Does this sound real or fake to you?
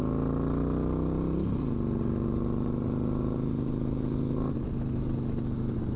real